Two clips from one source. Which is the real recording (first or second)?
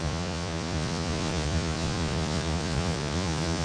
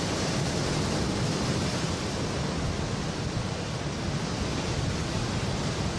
second